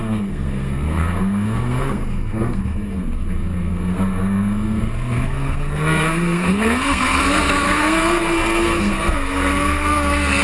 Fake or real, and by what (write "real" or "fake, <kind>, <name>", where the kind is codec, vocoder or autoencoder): fake, codec, SNAC